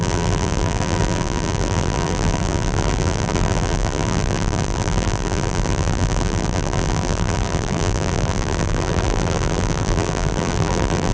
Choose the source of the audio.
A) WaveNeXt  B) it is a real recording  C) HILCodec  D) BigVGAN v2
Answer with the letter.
D